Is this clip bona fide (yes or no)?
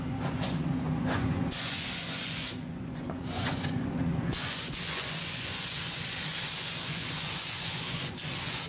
no